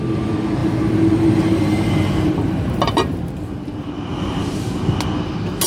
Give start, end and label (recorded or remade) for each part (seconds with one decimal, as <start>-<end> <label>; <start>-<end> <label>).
0.0-0.6 recorded; 0.6-3.2 remade; 3.2-4.1 recorded; 4.1-4.8 remade; 4.8-5.7 recorded